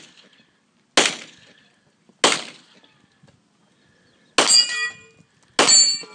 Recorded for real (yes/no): yes